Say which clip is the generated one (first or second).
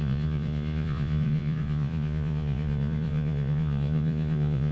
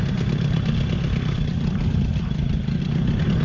first